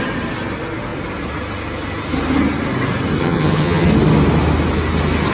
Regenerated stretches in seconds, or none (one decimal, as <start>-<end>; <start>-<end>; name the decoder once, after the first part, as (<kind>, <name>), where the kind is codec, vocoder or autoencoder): 3.2-3.9 (vocoder, HiFi-GAN)